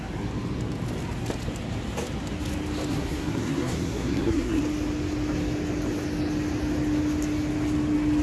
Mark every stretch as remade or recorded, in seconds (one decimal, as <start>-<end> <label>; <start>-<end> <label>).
0.0-2.9 recorded; 2.9-4.6 remade; 4.6-8.2 recorded